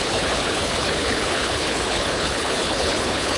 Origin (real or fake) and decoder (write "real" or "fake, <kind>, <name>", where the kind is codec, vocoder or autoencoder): fake, codec, HILCodec